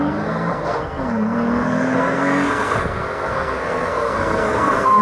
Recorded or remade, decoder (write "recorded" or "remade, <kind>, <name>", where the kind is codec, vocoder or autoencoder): remade, codec, SNAC